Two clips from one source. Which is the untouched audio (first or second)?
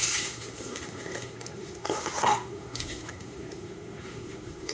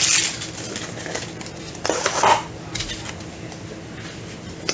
second